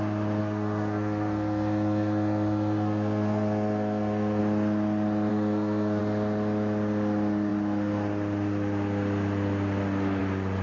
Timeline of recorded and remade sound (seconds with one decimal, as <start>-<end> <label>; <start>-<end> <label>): 0.0-0.4 recorded; 0.4-4.4 remade; 4.4-5.3 recorded; 5.3-6.0 remade; 6.0-10.6 recorded